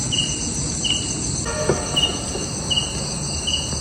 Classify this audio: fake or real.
real